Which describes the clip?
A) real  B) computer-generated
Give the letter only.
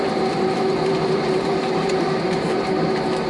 B